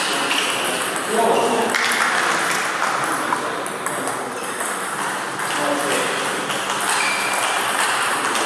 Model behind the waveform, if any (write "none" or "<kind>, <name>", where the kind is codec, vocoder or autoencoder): none